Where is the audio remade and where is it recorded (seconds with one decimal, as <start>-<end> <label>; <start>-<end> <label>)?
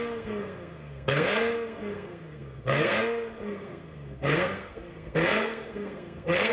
0.0-6.5 remade